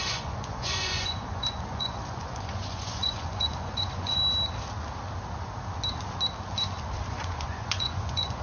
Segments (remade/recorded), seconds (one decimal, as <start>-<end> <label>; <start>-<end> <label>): 0.0-4.2 remade; 4.2-7.1 recorded; 7.1-8.4 remade